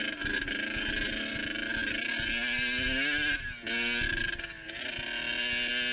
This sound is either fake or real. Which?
real